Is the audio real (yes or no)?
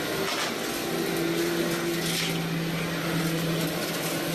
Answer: yes